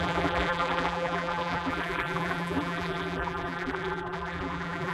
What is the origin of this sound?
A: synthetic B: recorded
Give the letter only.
A